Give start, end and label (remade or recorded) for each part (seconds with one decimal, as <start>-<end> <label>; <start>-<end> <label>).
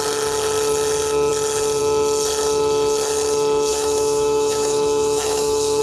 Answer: 0.0-3.7 recorded; 3.7-5.8 remade